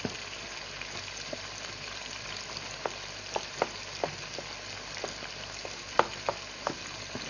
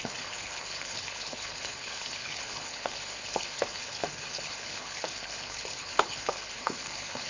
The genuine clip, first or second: first